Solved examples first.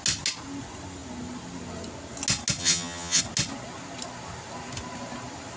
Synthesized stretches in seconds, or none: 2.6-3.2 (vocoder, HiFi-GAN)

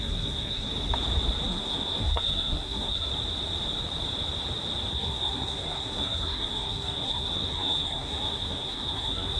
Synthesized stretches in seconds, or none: 0.0-0.7 (codec, SNAC); 1.4-3.1; 4.9-9.4